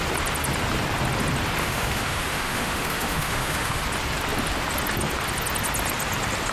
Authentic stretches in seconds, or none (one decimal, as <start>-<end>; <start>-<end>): 0.0-1.6; 3.8-6.5